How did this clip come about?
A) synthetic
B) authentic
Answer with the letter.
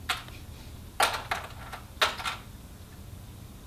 B